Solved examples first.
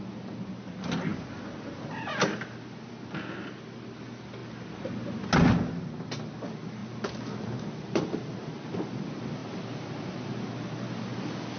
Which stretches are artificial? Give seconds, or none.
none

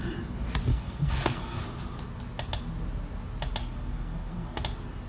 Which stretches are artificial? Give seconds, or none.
0.7-1.6 (codec, SNAC); 3.6-4.6

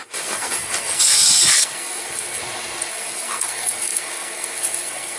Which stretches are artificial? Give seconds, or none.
0.0-2.4 (codec, SNAC); 2.9-5.2

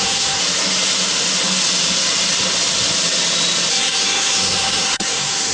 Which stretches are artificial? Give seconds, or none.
0.0-0.4 (codec, SNAC); 3.7-5.5

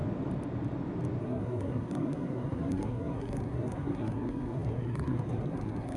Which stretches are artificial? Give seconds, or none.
1.2-6.0 (codec, SNAC)

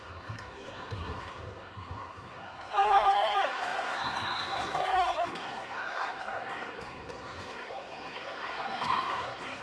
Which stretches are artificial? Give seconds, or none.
0.0-9.6 (codec, SNAC)